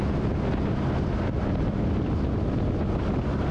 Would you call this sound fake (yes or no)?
no